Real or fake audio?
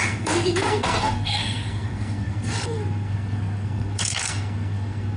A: fake